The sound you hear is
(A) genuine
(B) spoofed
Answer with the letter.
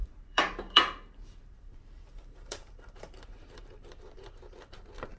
B